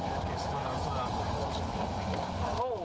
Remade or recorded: recorded